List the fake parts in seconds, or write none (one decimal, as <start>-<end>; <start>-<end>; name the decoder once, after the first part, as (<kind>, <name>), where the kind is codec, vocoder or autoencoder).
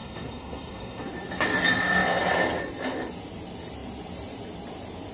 0.0-1.1 (codec, SNAC)